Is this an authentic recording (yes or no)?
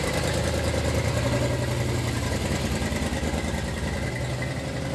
yes